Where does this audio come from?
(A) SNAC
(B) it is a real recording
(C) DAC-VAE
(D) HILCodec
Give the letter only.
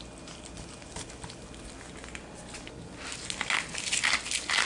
B